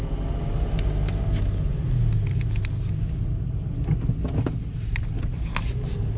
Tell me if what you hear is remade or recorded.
recorded